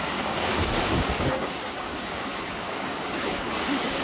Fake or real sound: fake